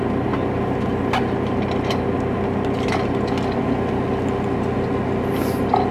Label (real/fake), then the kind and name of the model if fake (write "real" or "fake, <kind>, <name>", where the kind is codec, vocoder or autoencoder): real